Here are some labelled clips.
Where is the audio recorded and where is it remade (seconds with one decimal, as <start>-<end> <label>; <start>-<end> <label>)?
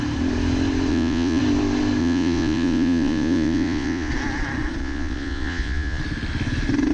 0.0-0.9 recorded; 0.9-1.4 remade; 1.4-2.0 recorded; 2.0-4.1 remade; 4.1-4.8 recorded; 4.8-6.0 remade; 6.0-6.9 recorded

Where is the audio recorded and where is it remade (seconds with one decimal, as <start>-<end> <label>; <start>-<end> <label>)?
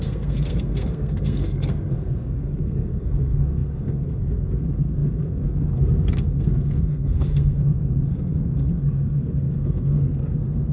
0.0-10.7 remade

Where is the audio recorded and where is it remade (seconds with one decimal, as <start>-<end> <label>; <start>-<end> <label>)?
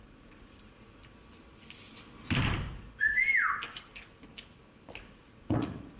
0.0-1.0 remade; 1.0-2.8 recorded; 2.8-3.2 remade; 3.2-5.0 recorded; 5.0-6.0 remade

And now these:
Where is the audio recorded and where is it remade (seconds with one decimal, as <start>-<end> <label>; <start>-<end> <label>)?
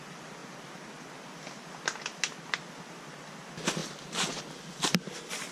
0.0-5.5 recorded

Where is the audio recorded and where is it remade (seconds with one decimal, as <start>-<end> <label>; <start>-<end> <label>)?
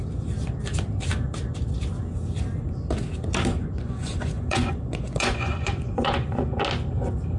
0.0-3.5 recorded; 3.5-6.6 remade; 6.6-7.4 recorded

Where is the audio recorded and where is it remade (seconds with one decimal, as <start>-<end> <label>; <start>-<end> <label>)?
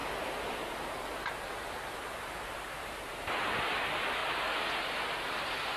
0.0-3.5 remade; 3.5-5.8 recorded